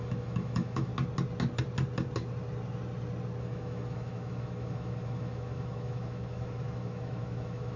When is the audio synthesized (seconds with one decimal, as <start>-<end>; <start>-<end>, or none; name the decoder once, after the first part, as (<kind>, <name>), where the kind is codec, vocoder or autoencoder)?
0.0-0.9 (autoencoder, DAC-VAE); 3.4-7.8